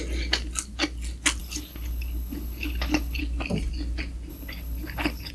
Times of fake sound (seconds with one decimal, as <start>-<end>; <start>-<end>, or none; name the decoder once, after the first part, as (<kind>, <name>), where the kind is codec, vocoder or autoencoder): 1.4-3.2 (codec, HILCodec); 4.3-5.3